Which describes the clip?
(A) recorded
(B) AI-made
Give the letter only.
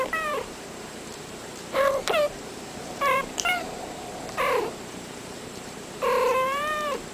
B